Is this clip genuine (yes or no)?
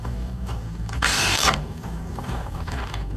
no